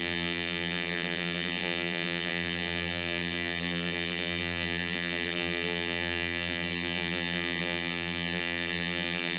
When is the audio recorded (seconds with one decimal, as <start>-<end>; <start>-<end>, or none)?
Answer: none